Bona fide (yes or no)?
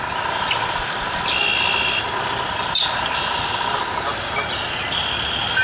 no